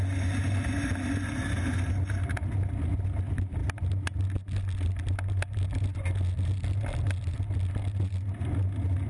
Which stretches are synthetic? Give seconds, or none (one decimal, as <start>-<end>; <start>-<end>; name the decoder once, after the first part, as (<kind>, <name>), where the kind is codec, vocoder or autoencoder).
none